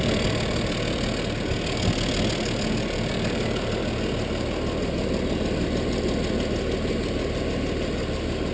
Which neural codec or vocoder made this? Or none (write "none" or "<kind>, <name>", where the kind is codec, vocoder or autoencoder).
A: none